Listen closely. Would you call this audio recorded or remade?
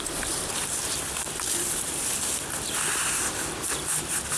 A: recorded